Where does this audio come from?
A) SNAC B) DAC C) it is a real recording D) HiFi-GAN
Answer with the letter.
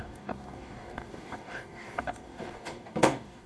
B